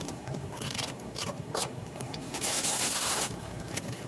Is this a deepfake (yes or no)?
yes